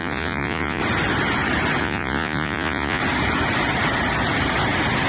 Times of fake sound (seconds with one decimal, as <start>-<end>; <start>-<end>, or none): 0.0-0.8; 1.8-3.0